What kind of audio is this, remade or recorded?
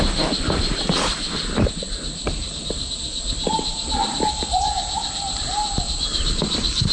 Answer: remade